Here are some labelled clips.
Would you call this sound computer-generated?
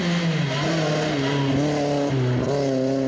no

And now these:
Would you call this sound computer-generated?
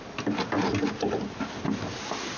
no